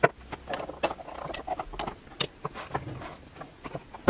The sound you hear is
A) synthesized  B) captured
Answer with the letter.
B